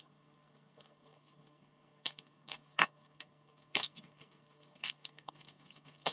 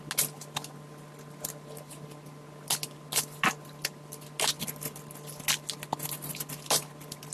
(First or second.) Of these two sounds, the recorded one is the second